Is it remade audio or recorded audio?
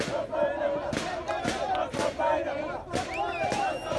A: recorded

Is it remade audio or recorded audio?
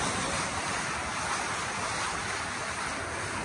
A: recorded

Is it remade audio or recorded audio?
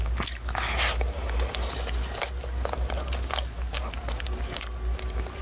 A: recorded